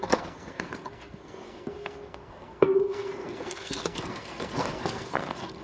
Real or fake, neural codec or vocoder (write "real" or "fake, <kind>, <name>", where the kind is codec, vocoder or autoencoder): fake, codec, SNAC